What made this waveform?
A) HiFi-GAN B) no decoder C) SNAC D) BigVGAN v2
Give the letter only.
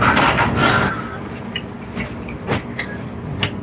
D